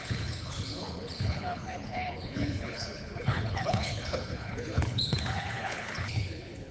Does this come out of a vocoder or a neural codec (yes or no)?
yes